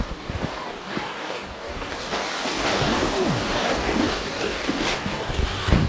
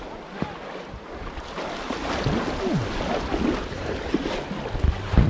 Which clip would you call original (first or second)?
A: second